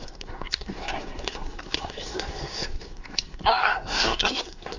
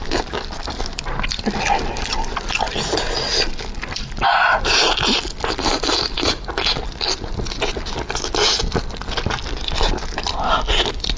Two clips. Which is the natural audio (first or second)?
second